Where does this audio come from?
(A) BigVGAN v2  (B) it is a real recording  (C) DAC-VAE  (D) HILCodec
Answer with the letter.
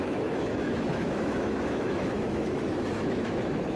C